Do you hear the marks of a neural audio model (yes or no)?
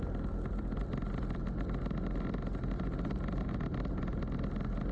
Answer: no